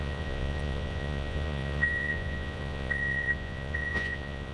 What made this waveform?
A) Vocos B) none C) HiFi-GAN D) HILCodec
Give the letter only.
A